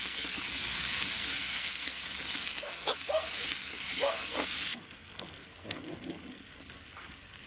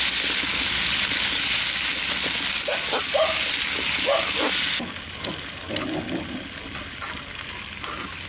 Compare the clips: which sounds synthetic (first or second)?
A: first